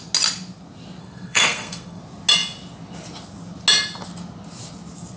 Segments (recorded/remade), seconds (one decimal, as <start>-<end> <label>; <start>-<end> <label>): 0.0-1.0 recorded; 1.0-2.0 remade; 2.0-5.2 recorded